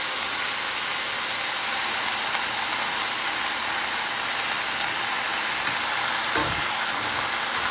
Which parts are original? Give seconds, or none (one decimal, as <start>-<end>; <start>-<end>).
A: 0.0-6.4; 7.2-7.7